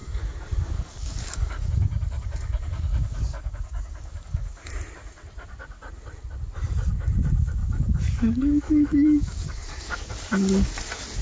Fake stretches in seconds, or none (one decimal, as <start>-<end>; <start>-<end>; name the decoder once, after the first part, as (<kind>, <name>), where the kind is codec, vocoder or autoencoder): 0.0-4.7 (codec, DAC); 7.6-10.1